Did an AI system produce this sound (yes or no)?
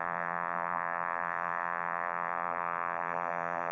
yes